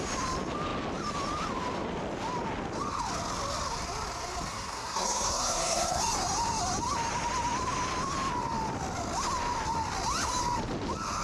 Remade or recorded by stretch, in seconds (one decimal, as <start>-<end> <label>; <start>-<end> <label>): 0.0-4.5 recorded; 4.5-6.0 remade; 6.0-11.2 recorded